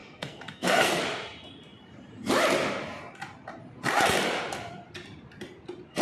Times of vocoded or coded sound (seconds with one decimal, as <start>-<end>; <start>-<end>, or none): 0.0-1.0